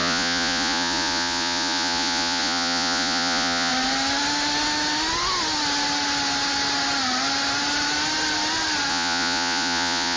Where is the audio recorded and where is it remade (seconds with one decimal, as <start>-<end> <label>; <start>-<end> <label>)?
0.0-3.7 remade; 3.7-8.9 recorded; 8.9-10.2 remade